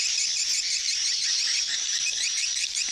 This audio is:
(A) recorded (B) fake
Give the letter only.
A